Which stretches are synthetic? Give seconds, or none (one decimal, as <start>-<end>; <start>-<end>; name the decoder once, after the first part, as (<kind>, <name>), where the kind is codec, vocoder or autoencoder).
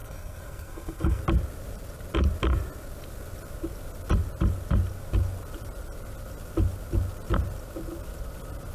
0.0-1.2 (codec, SNAC)